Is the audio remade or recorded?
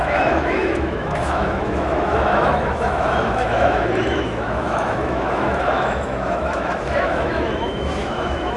remade